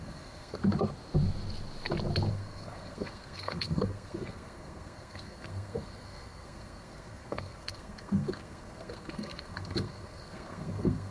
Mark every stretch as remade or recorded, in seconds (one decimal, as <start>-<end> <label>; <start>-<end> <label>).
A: 0.0-0.6 remade; 0.6-2.3 recorded; 2.3-11.1 remade